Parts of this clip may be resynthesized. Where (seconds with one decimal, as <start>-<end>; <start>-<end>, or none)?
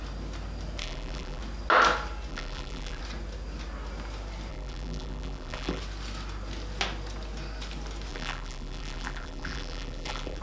0.8-1.4; 2.3-3.0; 4.5-5.8; 8.1-10.4